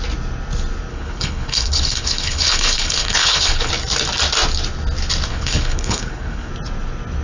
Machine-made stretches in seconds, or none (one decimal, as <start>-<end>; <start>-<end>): 0.9-3.7; 5.3-6.5